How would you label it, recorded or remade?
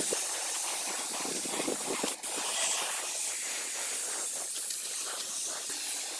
remade